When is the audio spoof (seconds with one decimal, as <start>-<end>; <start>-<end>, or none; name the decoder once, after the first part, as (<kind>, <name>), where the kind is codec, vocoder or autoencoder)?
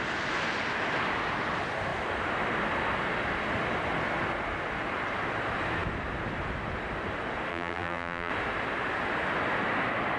7.5-8.3 (vocoder, BigVGAN v2)